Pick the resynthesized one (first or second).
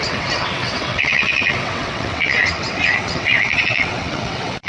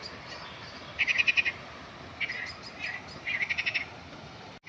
first